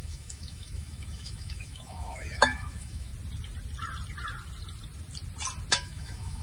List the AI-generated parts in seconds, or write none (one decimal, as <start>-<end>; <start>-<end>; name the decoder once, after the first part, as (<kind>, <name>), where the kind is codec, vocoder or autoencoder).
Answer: 0.0-3.1 (autoencoder, DAC-VAE); 5.7-6.4